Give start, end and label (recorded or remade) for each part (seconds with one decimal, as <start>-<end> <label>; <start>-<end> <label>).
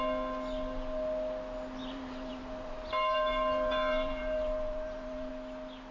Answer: 0.0-1.8 recorded; 1.8-5.3 remade; 5.3-5.9 recorded